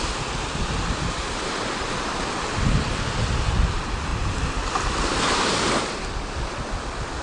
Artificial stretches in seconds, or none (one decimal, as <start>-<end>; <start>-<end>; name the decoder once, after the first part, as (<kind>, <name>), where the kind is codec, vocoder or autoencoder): none

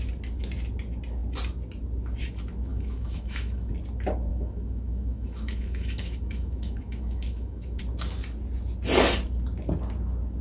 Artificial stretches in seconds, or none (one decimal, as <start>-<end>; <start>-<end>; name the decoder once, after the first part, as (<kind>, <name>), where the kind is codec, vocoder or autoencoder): 2.7-3.7 (autoencoder, DAC-VAE); 4.3-7.8

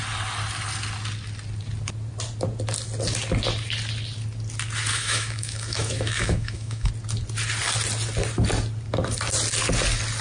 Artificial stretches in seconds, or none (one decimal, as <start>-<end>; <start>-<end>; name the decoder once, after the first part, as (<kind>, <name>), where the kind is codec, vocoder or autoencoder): 4.9-6.9 (autoencoder, DAC-VAE)

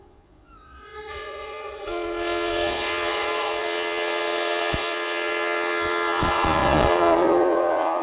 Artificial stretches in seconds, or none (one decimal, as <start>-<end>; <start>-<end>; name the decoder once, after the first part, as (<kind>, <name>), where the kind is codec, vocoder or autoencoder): 0.0-8.0 (vocoder, Vocos)

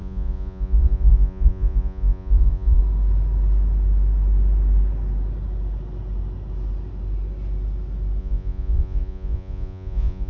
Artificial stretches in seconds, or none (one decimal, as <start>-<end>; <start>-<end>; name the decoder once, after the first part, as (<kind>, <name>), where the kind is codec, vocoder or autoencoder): 0.0-2.8 (vocoder, Vocos); 8.2-10.3

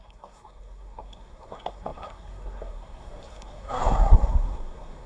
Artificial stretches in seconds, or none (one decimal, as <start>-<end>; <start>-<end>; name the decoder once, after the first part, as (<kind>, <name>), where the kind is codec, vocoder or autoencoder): 0.0-5.1 (codec, SNAC)